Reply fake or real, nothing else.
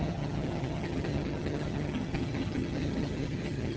fake